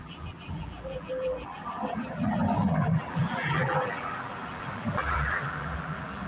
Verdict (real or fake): fake